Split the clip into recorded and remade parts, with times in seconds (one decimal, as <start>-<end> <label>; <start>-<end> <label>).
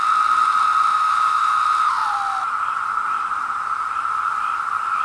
0.0-0.9 recorded; 0.9-1.6 remade; 1.6-5.0 recorded